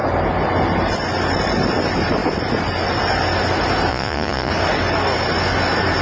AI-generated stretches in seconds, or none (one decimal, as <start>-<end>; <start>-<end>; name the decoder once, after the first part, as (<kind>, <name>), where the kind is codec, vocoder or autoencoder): 3.9-4.5 (vocoder, Vocos)